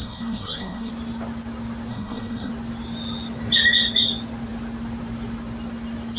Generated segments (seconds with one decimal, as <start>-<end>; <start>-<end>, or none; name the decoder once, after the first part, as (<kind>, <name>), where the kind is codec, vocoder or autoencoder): 0.0-0.9 (codec, SNAC); 1.9-2.5